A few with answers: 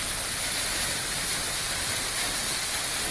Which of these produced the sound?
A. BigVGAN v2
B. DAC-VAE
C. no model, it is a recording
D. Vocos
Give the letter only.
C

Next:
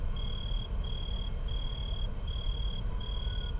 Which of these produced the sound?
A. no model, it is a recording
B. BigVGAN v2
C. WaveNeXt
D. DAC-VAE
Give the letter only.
A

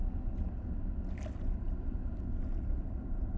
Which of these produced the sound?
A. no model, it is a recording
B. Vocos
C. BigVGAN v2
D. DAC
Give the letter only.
A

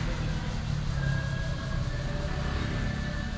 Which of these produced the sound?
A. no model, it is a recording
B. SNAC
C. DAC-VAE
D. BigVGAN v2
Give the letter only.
A